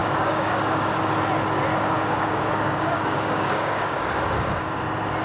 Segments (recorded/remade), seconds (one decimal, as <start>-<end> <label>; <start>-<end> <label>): 0.0-1.0 remade; 1.0-1.7 recorded; 1.7-4.8 remade; 4.8-5.2 recorded